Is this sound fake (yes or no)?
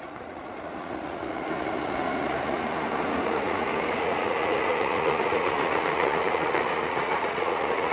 yes